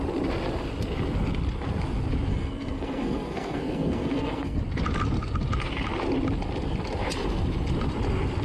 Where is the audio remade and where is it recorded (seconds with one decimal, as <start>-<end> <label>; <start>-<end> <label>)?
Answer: 0.0-2.3 recorded; 2.3-4.6 remade; 4.6-8.4 recorded